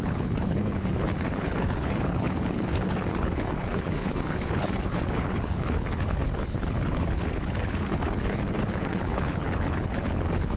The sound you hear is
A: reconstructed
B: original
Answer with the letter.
A